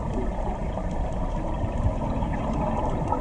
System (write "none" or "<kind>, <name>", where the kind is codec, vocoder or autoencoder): none